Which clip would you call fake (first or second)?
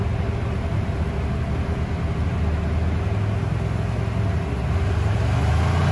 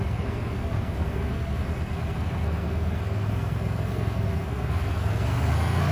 second